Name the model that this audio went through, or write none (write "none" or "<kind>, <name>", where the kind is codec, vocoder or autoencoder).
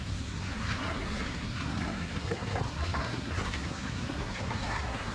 codec, SNAC